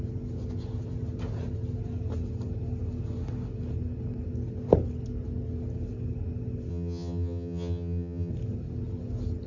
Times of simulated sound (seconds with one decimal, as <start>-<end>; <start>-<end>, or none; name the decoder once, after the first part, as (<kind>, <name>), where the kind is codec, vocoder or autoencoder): 6.7-8.3 (vocoder, HiFi-GAN)